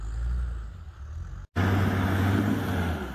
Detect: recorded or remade recorded